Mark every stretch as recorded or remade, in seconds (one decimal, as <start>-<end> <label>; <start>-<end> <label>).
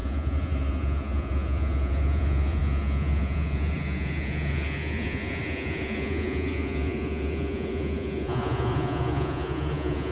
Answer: 0.0-10.1 remade